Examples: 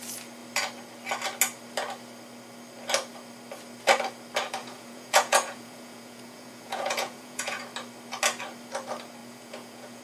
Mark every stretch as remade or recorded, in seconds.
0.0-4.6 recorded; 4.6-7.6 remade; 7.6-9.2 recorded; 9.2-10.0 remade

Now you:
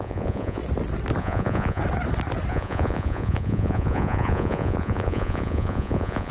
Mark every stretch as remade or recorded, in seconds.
0.0-0.6 remade; 0.6-1.2 recorded; 1.2-1.8 remade; 1.8-2.5 recorded; 2.5-6.3 remade